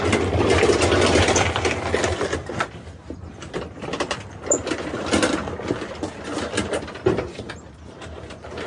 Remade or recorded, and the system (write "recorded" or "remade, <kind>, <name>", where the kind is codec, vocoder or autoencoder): recorded